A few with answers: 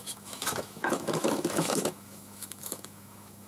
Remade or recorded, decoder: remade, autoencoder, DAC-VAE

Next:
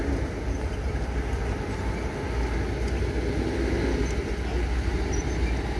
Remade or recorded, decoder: recorded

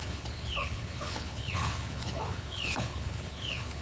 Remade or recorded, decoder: remade, codec, HILCodec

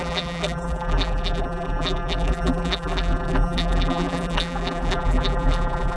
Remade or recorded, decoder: remade, vocoder, BigVGAN v2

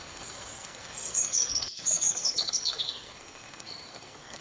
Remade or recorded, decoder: remade, codec, SNAC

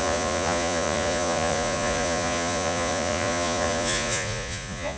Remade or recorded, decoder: remade, vocoder, Vocos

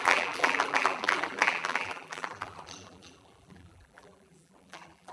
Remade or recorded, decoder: remade, vocoder, BigVGAN v2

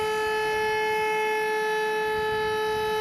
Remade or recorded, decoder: recorded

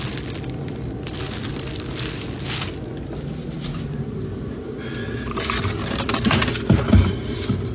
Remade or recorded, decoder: recorded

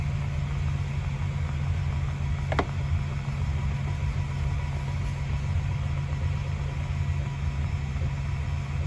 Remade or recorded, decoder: recorded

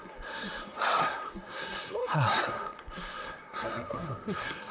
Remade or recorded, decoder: remade, codec, SNAC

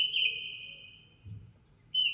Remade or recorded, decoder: recorded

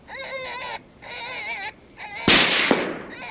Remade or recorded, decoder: recorded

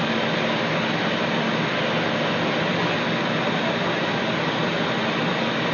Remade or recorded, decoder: recorded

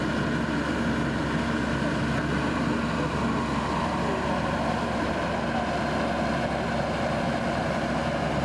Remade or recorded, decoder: recorded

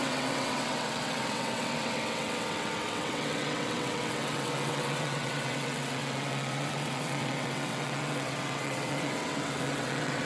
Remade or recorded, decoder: remade, vocoder, WaveNeXt